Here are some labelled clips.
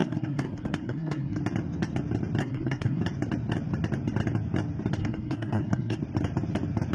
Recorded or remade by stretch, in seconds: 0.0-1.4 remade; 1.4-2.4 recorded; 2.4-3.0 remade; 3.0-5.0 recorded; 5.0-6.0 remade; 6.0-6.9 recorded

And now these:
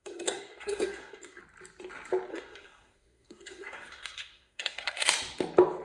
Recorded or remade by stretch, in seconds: 0.0-1.4 remade; 1.4-2.3 recorded; 2.3-5.1 remade; 5.1-5.8 recorded

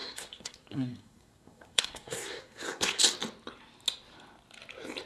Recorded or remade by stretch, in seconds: 0.0-3.0 remade; 3.0-5.0 recorded

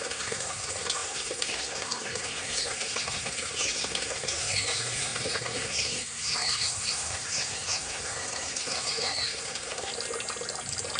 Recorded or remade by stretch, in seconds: 0.0-9.9 remade; 9.9-11.0 recorded